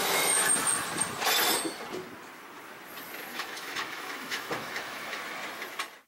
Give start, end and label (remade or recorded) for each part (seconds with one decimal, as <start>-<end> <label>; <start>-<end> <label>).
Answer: 0.0-0.5 remade; 0.5-3.3 recorded; 3.3-5.2 remade; 5.2-6.1 recorded